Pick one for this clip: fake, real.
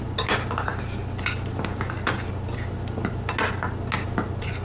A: real